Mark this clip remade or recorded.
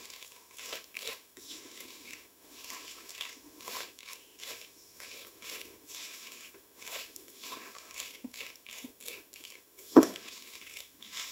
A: remade